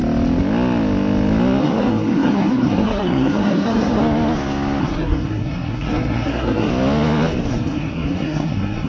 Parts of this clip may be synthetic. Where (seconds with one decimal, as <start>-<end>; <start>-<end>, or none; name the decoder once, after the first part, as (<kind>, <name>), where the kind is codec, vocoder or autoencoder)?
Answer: 1.6-4.0 (codec, SNAC); 4.8-6.7; 7.5-8.9